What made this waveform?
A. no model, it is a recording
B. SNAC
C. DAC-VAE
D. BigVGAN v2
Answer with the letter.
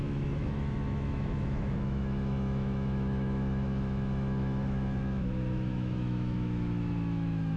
C